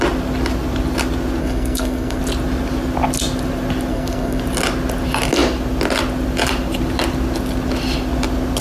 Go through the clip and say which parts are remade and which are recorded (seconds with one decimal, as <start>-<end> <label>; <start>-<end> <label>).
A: 0.0-1.4 recorded; 1.4-2.2 remade; 2.2-3.9 recorded; 3.9-4.4 remade; 4.4-8.6 recorded